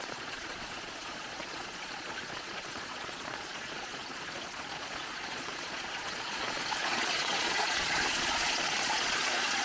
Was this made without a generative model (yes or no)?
no